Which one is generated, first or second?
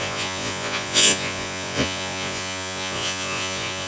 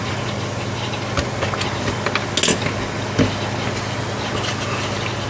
first